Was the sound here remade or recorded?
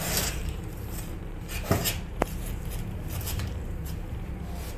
remade